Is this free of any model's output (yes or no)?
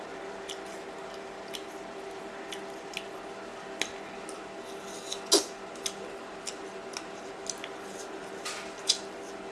yes